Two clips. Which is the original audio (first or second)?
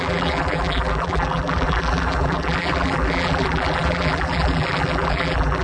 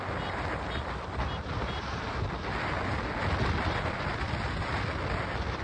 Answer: second